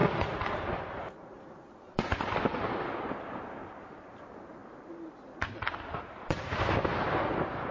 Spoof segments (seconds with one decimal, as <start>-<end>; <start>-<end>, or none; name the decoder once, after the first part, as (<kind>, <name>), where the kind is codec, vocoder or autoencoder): 1.2-4.6 (vocoder, BigVGAN v2); 6.0-7.7